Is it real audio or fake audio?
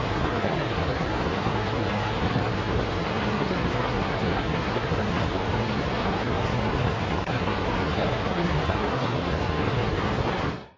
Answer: fake